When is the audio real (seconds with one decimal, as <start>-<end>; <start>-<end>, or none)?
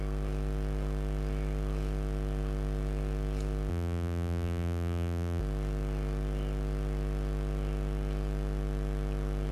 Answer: 0.0-3.7; 5.4-9.5